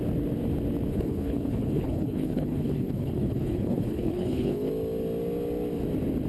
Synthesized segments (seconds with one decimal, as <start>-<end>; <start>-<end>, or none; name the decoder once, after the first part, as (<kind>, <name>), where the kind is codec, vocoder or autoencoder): 0.9-4.7 (codec, HILCodec)